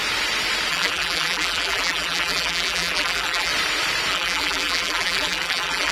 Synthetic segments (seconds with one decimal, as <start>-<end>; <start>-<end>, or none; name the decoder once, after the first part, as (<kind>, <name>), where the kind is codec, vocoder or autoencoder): 0.7-3.5 (vocoder, BigVGAN v2); 4.1-5.9